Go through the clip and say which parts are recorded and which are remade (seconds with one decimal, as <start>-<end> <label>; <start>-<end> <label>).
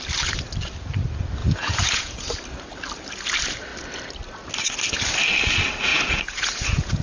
0.0-1.4 recorded; 1.4-2.2 remade; 2.2-5.9 recorded; 5.9-7.0 remade